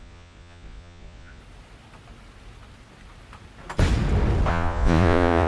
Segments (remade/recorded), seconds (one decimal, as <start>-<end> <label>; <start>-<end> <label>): 0.0-1.4 remade; 1.4-4.5 recorded; 4.5-5.5 remade